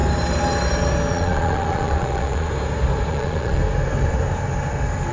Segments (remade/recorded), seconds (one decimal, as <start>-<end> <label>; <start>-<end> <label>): 0.0-1.1 recorded; 1.1-2.5 remade; 2.5-3.1 recorded; 3.1-3.6 remade; 3.6-5.1 recorded